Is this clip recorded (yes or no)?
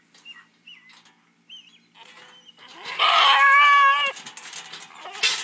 yes